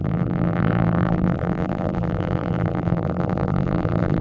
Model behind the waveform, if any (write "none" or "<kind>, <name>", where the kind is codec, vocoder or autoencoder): vocoder, BigVGAN v2